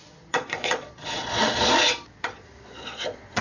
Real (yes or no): no